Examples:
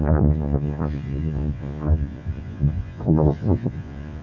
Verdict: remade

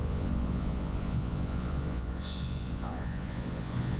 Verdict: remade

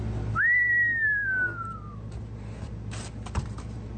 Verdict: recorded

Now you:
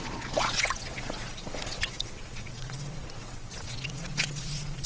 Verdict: remade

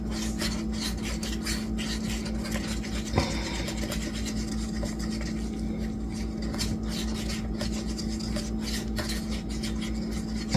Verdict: recorded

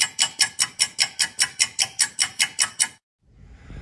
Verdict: recorded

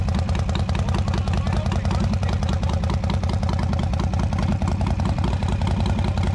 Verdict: recorded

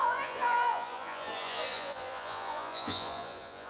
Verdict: remade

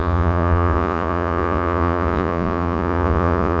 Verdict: remade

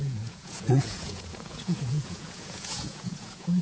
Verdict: remade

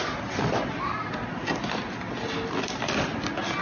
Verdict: recorded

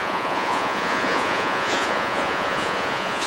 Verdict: remade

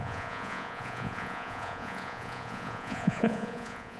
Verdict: remade